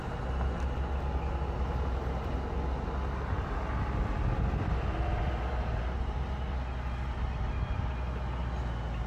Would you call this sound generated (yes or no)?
no